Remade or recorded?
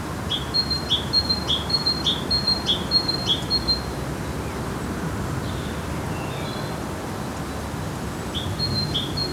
recorded